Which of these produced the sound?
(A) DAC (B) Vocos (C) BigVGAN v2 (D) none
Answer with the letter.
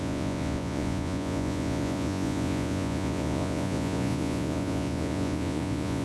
B